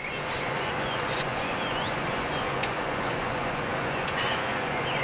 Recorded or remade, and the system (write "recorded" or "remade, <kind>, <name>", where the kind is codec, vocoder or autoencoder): remade, vocoder, Vocos